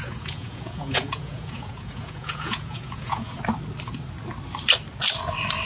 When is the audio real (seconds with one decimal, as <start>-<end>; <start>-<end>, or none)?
3.4-5.7